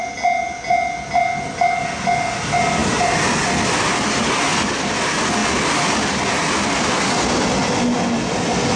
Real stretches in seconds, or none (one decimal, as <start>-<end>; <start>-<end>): 0.0-8.8